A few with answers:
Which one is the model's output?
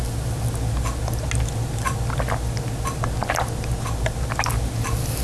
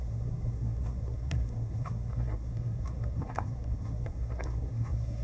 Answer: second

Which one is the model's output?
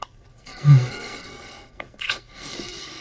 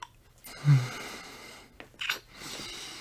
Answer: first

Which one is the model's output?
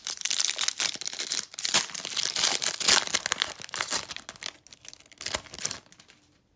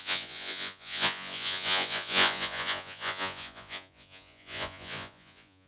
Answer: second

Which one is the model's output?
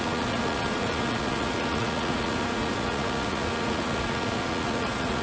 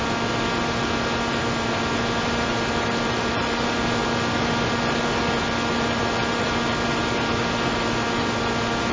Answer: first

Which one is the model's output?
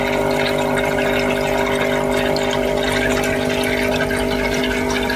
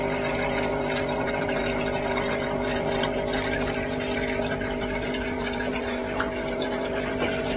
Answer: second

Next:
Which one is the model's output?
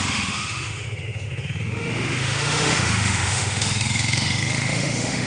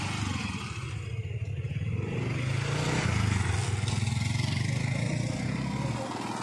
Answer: first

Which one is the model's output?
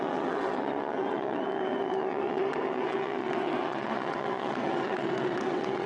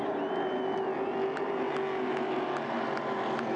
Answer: first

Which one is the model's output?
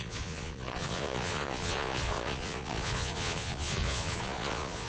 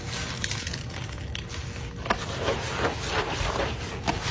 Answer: first